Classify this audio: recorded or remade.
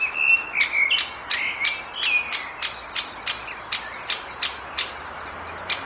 recorded